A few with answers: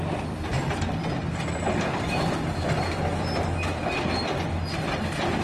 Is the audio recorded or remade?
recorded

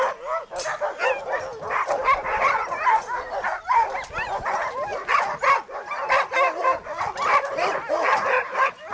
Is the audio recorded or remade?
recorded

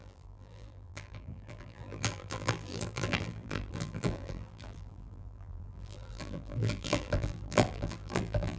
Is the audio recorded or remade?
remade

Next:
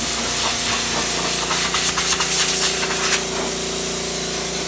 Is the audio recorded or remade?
recorded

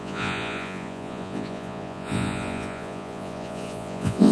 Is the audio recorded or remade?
remade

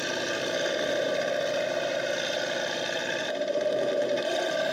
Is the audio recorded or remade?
recorded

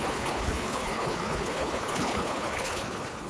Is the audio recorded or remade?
remade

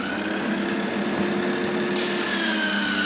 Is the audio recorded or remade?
recorded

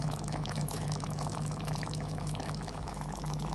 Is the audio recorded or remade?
remade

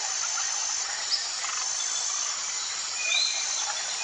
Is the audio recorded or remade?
remade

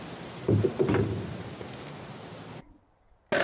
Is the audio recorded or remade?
recorded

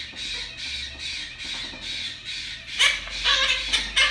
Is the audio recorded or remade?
recorded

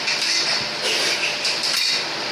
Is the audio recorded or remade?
remade